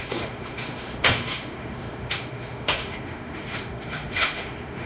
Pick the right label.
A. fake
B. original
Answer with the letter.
A